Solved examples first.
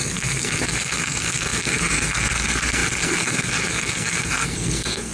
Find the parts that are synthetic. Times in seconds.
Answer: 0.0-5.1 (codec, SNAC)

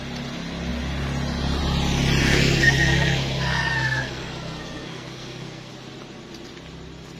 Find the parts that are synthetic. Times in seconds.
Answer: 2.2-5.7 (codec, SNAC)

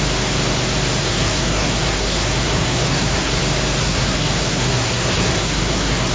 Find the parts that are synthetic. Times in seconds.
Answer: 1.0-3.4 (codec, SNAC); 3.8-6.1